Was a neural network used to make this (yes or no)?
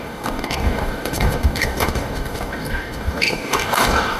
yes